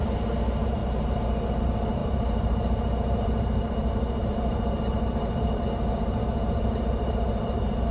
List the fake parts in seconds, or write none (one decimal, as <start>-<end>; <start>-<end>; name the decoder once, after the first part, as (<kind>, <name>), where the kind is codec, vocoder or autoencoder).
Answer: 0.0-0.8 (vocoder, BigVGAN v2); 1.6-7.9